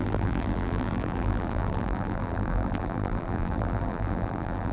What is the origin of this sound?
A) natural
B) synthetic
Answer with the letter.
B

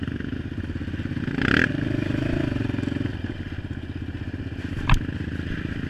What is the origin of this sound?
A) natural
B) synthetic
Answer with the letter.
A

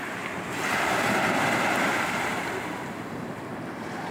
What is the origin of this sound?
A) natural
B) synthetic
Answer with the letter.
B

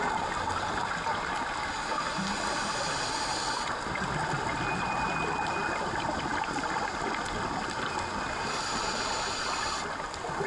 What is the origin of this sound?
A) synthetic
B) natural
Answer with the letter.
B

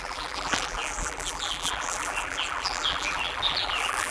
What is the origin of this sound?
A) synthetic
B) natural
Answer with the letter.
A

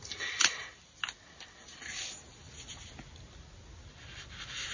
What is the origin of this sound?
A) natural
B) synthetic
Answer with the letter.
A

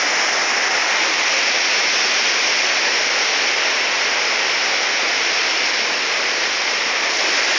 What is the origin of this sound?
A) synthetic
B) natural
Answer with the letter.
B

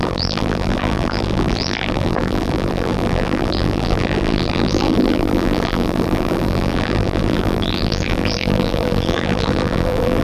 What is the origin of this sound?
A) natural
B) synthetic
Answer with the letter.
B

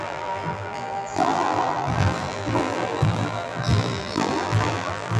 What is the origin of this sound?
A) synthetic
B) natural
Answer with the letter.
A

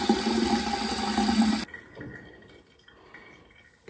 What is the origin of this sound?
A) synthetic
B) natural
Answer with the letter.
B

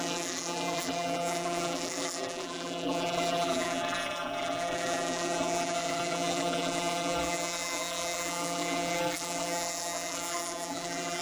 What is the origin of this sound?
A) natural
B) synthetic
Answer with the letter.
B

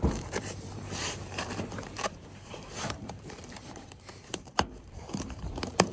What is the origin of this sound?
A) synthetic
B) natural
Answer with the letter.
A